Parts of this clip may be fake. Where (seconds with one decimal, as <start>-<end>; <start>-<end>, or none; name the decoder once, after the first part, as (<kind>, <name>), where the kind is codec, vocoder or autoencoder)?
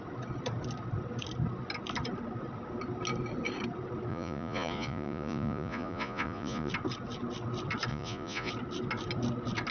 4.1-6.7 (vocoder, Vocos); 7.9-8.5